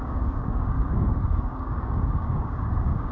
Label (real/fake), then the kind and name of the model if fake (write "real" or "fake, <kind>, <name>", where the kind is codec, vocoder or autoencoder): fake, codec, DAC